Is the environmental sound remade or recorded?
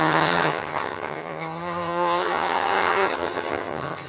remade